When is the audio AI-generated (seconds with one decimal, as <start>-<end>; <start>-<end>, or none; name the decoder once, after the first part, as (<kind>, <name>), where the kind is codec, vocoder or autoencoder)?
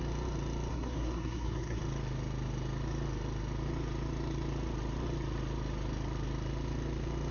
0.7-1.8 (codec, SNAC)